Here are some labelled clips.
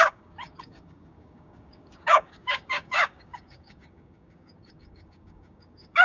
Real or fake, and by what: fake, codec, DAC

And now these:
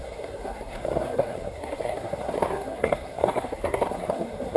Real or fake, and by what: fake, codec, SNAC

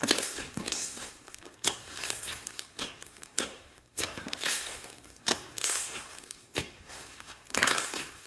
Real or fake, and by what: fake, codec, SNAC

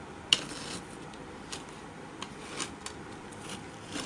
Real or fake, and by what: fake, vocoder, BigVGAN v2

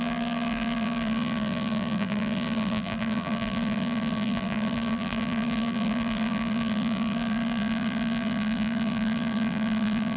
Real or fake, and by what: fake, vocoder, BigVGAN v2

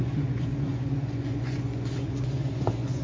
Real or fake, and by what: fake, vocoder, Vocos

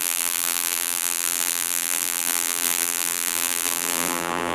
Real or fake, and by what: fake, vocoder, BigVGAN v2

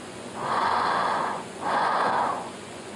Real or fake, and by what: fake, vocoder, Vocos